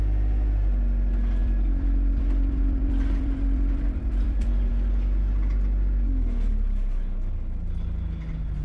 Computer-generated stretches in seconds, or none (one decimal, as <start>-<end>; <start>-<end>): 1.4-4.7